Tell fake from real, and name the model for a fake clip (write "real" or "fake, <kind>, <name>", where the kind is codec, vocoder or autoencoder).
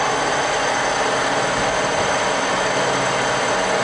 real